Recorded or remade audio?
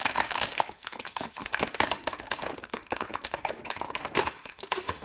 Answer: remade